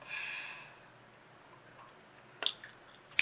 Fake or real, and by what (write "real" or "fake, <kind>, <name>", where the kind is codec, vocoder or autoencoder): real